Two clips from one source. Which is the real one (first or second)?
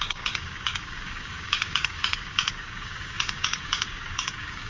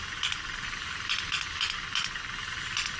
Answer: second